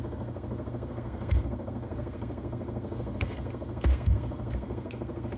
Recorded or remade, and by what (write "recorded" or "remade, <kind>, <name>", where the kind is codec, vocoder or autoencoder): remade, codec, SNAC